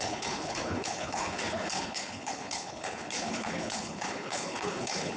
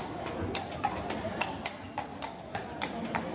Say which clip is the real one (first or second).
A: second